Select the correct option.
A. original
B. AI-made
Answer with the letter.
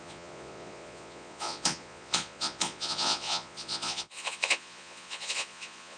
B